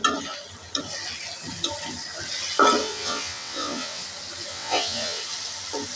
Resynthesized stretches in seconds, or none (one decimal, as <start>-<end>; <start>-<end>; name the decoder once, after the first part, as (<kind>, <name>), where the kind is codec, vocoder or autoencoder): 2.8-4.0 (vocoder, WaveNeXt); 4.5-5.2